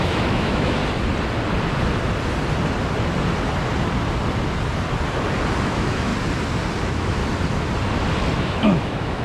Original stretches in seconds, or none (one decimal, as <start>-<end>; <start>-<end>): 0.8-5.6; 6.1-6.8; 7.2-8.3

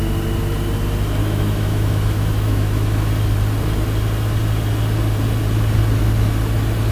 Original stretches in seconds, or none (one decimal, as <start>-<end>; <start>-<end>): 0.0-1.2; 3.1-6.9

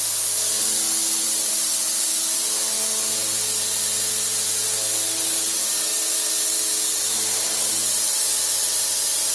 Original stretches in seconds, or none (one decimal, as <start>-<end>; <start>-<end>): 0.0-9.3

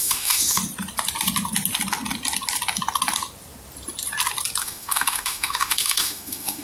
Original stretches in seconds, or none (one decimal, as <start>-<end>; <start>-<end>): 0.6-4.6

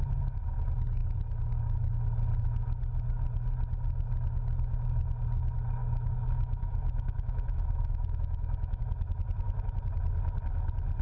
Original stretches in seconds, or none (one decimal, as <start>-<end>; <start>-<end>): 0.0-5.8; 8.8-11.0